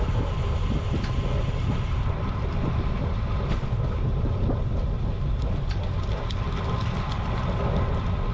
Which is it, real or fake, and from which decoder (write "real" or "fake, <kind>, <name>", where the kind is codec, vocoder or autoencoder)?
real